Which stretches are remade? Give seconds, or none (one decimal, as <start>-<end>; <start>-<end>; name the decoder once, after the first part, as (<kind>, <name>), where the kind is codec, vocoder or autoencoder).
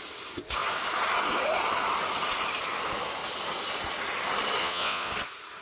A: 4.6-5.1 (vocoder, Vocos)